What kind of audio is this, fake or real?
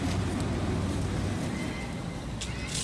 real